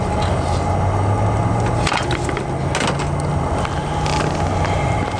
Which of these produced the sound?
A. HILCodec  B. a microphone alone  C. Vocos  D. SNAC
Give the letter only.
B